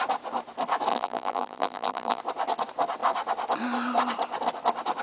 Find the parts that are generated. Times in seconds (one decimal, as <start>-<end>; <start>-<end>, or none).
0.9-2.2